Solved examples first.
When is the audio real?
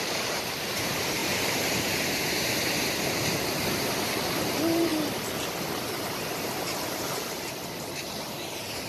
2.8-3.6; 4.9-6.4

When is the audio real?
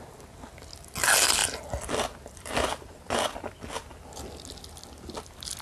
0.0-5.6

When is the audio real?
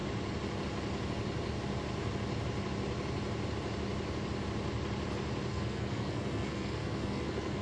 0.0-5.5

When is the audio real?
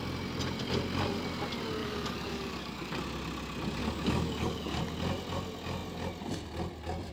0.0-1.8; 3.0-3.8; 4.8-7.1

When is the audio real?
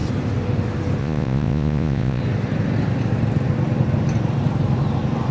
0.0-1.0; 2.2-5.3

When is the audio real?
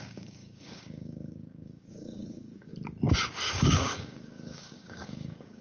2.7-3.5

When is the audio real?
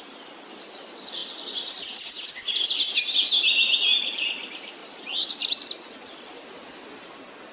0.0-4.8; 5.3-7.5